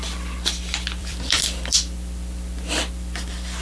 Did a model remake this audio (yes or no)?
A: yes